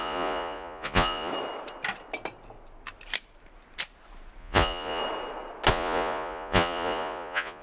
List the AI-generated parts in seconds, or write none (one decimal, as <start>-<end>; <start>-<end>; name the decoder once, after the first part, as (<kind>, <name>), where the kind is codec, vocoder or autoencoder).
0.0-1.3 (vocoder, Vocos); 4.4-5.0; 5.7-7.6